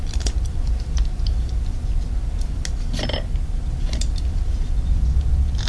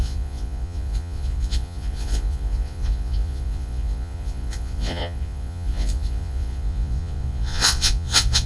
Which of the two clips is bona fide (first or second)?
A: first